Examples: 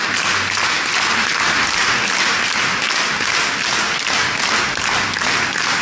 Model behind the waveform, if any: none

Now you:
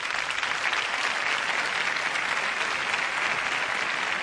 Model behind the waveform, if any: none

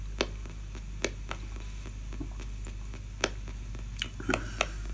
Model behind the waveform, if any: none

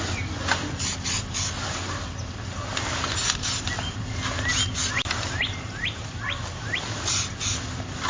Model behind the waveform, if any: none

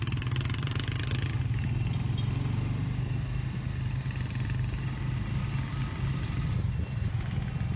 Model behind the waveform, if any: none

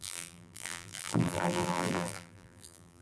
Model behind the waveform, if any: vocoder, BigVGAN v2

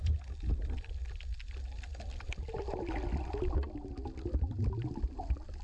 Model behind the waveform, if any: none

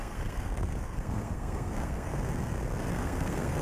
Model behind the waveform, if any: codec, SNAC